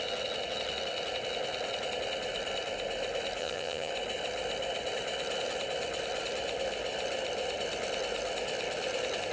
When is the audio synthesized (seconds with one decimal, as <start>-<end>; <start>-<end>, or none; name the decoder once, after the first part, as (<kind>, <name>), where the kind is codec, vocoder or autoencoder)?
3.4-3.9 (vocoder, HiFi-GAN)